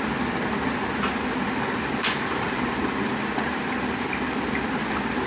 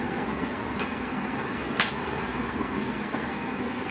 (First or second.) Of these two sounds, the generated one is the second